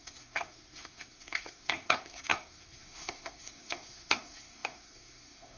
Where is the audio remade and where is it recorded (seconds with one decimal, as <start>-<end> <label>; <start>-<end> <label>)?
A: 0.0-5.6 remade